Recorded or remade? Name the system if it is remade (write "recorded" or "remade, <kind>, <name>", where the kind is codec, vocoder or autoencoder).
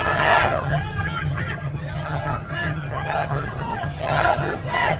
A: remade, vocoder, HiFi-GAN